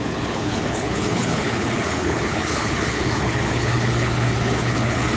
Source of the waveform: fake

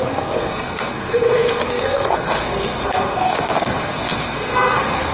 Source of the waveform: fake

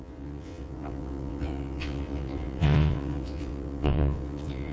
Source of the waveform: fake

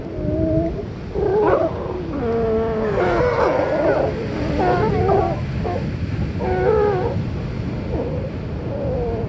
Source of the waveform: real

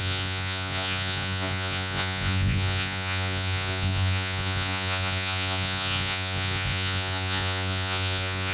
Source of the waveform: fake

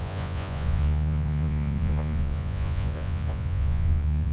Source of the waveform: fake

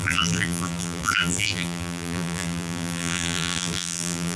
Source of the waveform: fake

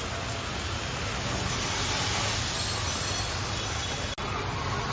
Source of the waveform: real